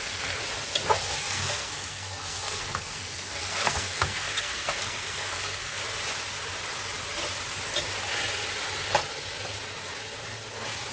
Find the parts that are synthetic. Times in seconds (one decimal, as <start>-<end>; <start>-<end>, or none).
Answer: 0.0-0.4; 1.2-5.8